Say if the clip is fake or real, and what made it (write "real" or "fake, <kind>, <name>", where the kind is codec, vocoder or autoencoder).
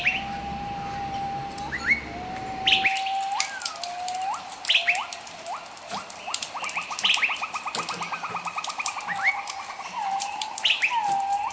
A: real